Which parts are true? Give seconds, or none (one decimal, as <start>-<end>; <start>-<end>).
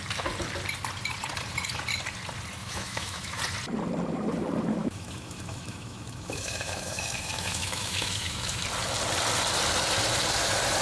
0.0-2.6; 3.4-4.8; 8.6-10.8